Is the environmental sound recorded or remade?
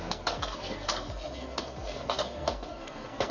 remade